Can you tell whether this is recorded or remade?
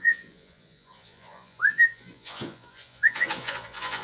remade